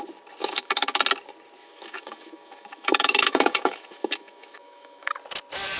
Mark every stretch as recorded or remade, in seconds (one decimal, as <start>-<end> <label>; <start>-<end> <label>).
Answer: 0.0-0.4 recorded; 0.4-1.0 remade; 1.0-1.6 recorded; 1.6-5.1 remade; 5.1-5.8 recorded